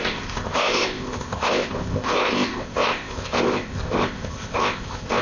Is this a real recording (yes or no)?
no